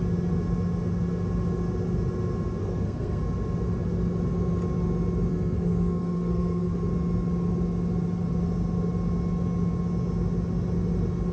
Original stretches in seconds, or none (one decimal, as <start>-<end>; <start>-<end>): 0.0-2.6; 3.2-5.3; 6.8-11.3